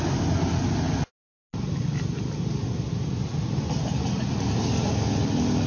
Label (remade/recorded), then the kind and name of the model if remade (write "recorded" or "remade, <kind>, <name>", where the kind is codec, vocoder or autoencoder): recorded